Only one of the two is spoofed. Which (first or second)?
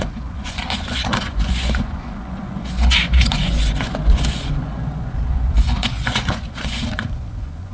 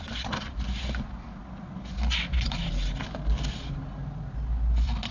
first